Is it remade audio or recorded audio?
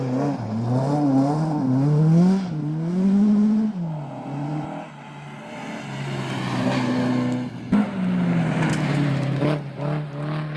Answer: recorded